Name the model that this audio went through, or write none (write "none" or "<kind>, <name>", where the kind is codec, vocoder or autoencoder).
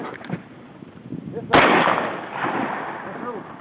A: none